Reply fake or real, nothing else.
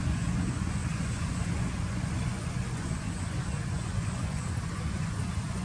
fake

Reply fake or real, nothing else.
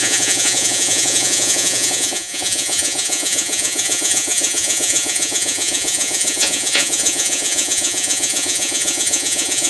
fake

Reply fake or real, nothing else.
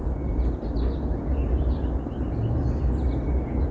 real